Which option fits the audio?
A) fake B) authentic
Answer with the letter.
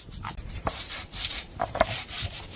A